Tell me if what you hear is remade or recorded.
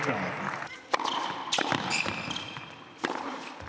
recorded